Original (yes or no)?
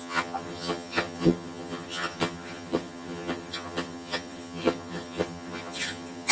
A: no